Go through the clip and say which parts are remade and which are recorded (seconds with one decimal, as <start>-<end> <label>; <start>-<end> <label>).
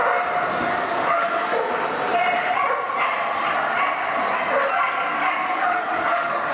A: 0.0-0.8 recorded; 0.8-1.5 remade; 1.5-4.9 recorded; 4.9-6.5 remade